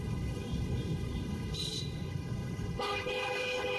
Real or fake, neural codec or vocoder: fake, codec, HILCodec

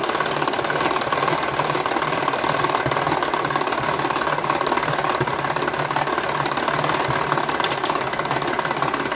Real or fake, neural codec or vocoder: real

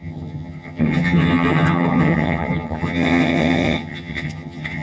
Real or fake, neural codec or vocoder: fake, vocoder, HiFi-GAN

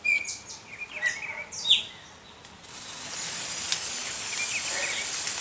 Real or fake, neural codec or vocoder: real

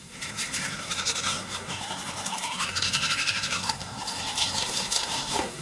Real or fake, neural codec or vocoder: fake, codec, SNAC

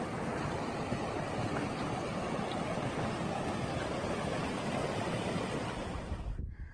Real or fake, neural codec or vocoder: real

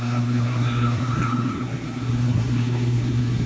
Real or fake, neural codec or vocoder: fake, codec, SNAC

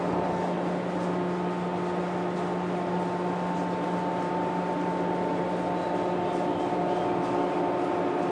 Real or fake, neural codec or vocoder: real